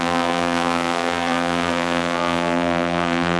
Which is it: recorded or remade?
remade